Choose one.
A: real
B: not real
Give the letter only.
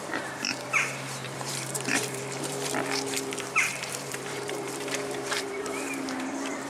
B